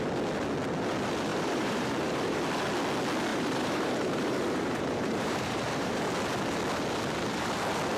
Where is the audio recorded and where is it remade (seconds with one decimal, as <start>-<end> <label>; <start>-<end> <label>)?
0.0-1.3 recorded; 1.3-2.4 remade; 2.4-3.3 recorded; 3.3-6.1 remade; 6.1-8.0 recorded